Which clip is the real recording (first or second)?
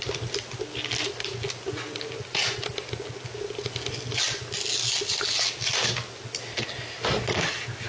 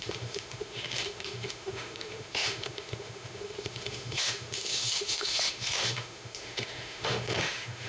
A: first